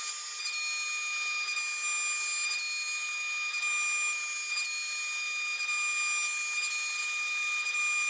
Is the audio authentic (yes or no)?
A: yes